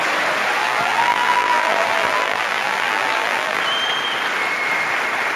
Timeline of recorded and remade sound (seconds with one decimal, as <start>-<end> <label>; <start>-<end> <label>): 0.0-0.6 recorded; 0.6-3.6 remade; 3.6-5.4 recorded